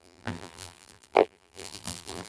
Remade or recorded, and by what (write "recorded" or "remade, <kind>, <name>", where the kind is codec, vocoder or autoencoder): remade, vocoder, BigVGAN v2